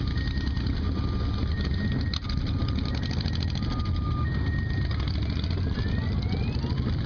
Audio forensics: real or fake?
real